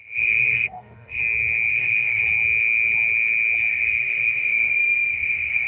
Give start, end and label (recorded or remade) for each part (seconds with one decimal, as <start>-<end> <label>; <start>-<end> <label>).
0.0-1.2 remade; 1.2-1.7 recorded; 1.7-2.2 remade; 2.2-3.7 recorded; 3.7-5.7 remade